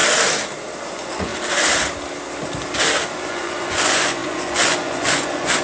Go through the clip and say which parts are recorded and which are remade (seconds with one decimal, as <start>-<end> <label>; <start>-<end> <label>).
0.0-0.8 recorded; 0.8-1.3 remade; 1.3-3.2 recorded; 3.2-5.6 remade